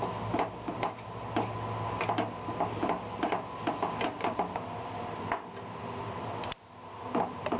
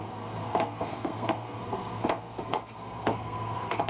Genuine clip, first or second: first